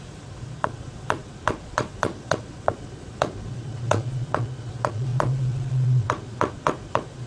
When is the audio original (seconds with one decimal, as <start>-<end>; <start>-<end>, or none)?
none